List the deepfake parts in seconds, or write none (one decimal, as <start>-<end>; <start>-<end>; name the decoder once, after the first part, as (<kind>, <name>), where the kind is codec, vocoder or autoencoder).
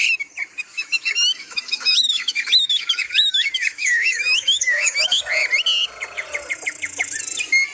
0.7-5.3 (autoencoder, DAC-VAE)